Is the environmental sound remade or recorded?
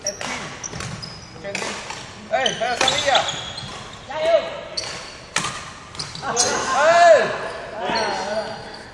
recorded